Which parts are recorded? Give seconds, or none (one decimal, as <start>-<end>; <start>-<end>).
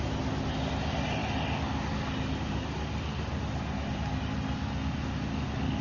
0.0-5.8